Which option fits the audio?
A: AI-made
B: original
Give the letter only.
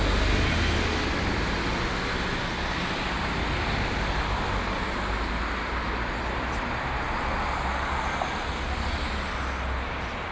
B